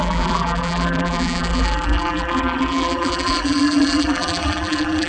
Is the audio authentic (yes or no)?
no